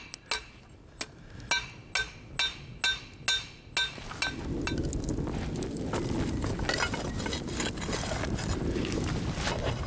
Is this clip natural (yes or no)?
yes